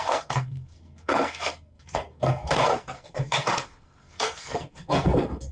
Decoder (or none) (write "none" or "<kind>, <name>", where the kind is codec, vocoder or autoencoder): codec, SNAC